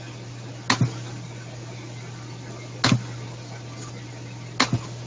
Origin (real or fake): real